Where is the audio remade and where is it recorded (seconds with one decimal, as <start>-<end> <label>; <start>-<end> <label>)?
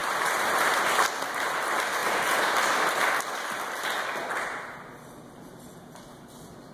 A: 0.0-0.8 remade; 0.8-6.7 recorded